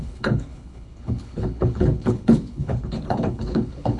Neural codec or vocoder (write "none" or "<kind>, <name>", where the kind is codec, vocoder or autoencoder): codec, HILCodec